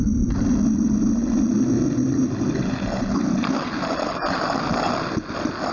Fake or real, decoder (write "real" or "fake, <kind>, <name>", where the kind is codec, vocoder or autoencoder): real